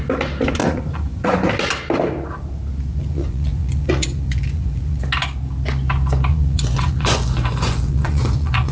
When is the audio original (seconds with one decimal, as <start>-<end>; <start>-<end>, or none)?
0.0-0.6; 1.5-2.9; 5.0-6.3